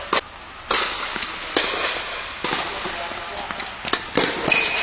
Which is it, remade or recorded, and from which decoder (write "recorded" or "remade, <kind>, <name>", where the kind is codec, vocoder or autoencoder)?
recorded